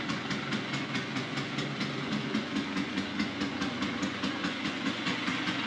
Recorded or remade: remade